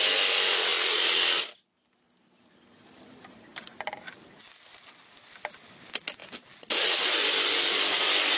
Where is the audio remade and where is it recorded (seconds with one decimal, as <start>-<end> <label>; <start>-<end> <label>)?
0.0-0.7 recorded; 0.7-4.9 remade; 4.9-8.4 recorded